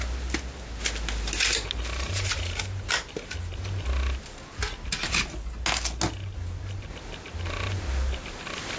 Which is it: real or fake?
real